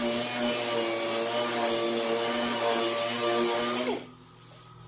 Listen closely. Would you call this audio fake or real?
real